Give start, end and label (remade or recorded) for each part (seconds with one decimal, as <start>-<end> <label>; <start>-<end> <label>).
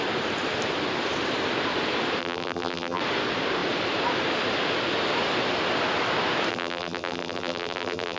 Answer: 0.0-2.2 recorded; 2.2-3.0 remade; 3.0-6.5 recorded; 6.5-8.2 remade